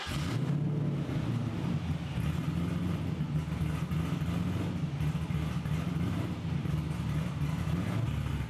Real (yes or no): yes